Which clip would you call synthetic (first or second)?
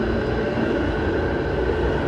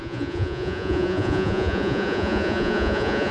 second